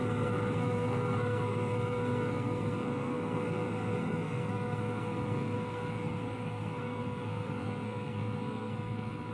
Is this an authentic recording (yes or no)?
no